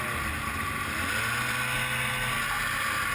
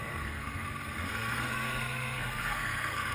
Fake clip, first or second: second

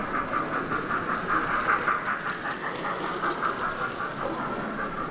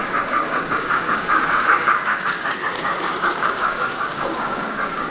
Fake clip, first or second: second